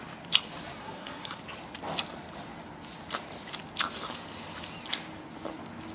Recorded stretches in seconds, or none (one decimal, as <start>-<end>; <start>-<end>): 0.0-0.8; 1.4-5.9